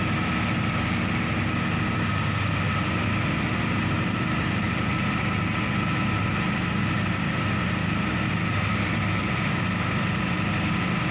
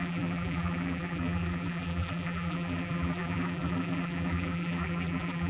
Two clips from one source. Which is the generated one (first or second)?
second